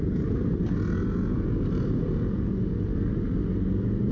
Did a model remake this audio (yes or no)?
no